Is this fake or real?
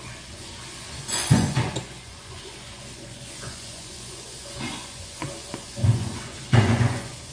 fake